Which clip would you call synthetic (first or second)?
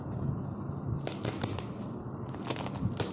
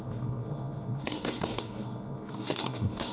second